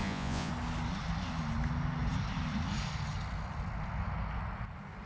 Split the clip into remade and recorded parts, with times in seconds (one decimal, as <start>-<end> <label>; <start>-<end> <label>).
0.0-0.5 remade; 0.5-5.1 recorded

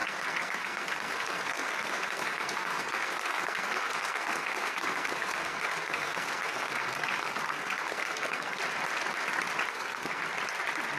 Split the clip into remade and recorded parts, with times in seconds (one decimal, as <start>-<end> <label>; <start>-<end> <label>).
0.0-8.6 remade; 8.6-9.7 recorded; 9.7-10.2 remade; 10.2-11.0 recorded

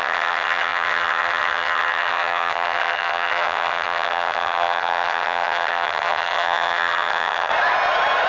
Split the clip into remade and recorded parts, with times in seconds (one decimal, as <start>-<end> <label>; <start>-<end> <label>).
0.0-7.5 remade; 7.5-8.3 recorded

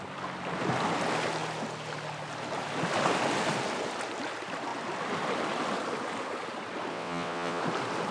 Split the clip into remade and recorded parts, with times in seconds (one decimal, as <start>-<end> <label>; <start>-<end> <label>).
0.0-6.9 recorded; 6.9-7.6 remade; 7.6-8.1 recorded

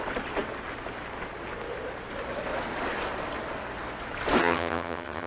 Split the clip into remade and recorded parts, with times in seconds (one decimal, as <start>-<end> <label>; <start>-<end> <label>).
0.0-4.4 recorded; 4.4-5.3 remade

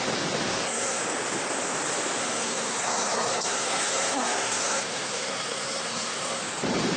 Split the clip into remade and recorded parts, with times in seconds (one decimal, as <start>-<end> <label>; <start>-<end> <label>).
0.0-0.4 recorded; 0.4-1.0 remade; 1.0-2.2 recorded; 2.2-6.4 remade; 6.4-7.0 recorded

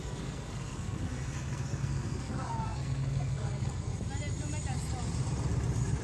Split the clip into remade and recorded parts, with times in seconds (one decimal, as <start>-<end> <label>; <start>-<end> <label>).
0.0-3.9 remade; 3.9-6.0 recorded

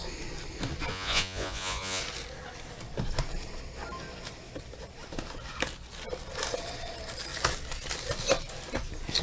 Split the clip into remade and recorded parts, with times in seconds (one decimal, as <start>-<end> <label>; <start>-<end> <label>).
0.0-0.9 recorded; 0.9-2.0 remade; 2.0-9.2 recorded